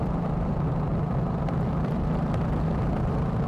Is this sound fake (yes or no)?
yes